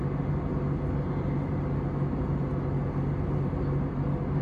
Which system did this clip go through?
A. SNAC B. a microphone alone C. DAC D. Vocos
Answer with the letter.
B